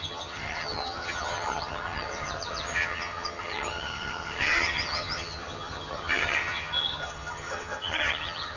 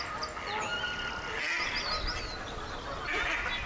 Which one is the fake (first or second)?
first